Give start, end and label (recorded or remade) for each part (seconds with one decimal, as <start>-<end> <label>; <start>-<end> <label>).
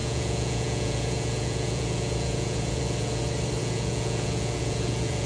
0.0-3.2 remade; 3.2-3.6 recorded; 3.6-5.3 remade